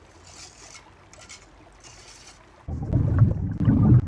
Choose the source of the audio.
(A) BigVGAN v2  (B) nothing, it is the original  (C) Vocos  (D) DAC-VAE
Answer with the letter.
B